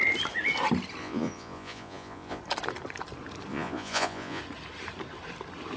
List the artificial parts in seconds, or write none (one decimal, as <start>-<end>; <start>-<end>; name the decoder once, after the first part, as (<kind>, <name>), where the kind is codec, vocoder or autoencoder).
1.0-2.4 (vocoder, Vocos); 3.5-4.4